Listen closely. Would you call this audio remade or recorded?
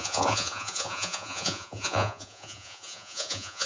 remade